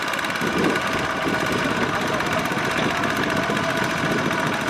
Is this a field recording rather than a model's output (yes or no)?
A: yes